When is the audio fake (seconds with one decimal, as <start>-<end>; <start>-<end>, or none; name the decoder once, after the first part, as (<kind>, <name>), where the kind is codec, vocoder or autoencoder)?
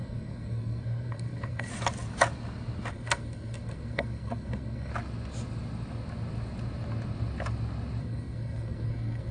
0.0-1.7 (codec, SNAC); 2.9-4.9; 8.0-9.3